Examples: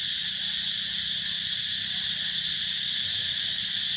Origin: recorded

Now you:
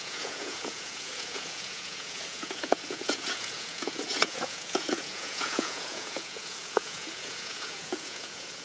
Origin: remade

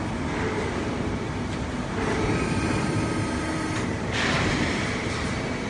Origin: recorded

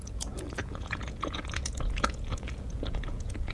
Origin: remade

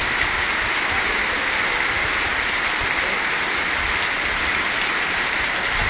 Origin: recorded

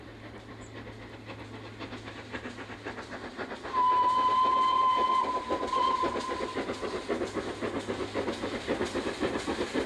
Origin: recorded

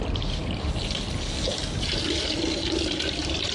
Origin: recorded